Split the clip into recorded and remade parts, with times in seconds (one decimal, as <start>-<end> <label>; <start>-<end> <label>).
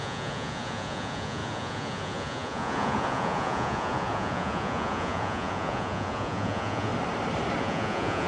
0.0-6.9 remade; 6.9-7.6 recorded; 7.6-8.3 remade